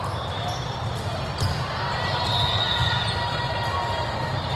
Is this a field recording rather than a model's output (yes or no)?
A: yes